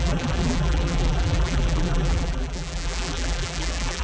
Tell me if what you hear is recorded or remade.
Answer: remade